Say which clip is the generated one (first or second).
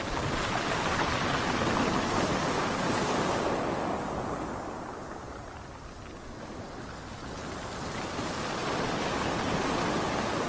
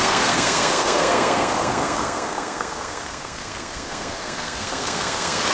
second